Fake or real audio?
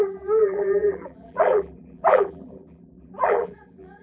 fake